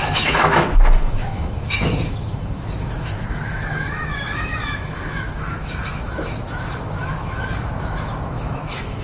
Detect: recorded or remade remade